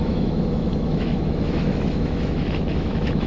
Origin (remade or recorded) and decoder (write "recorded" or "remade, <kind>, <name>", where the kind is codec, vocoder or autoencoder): remade, autoencoder, DAC-VAE